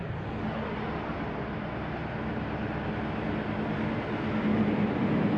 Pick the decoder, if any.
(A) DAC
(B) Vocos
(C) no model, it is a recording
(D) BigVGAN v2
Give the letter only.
C